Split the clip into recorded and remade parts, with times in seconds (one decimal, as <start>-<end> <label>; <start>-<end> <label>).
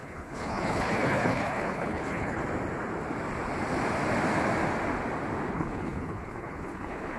0.0-2.4 remade; 2.4-5.5 recorded; 5.5-7.2 remade